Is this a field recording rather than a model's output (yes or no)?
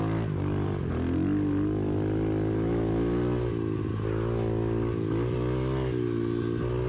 yes